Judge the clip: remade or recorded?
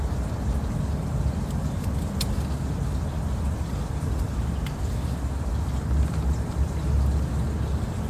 recorded